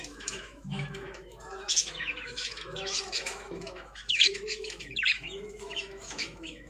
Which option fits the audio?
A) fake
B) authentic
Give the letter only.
A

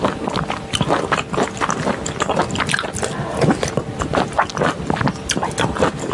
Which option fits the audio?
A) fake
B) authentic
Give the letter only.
B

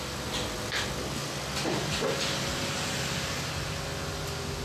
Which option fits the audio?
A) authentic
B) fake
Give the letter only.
A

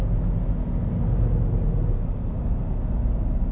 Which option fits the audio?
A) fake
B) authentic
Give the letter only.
B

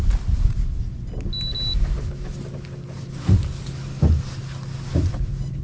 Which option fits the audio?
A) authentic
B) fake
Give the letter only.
A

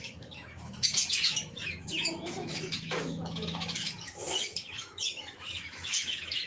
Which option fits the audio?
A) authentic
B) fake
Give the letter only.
B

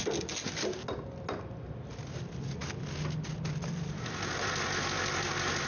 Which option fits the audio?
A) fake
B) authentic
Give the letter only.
B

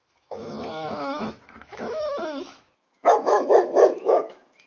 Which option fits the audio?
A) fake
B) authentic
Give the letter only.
A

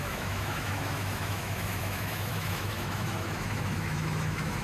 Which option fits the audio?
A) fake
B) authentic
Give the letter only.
A